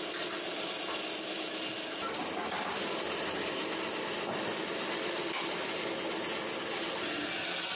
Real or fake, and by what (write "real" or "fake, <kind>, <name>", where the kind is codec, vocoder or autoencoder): real